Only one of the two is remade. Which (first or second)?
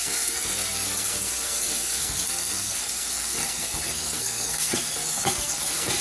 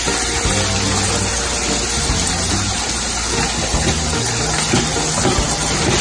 first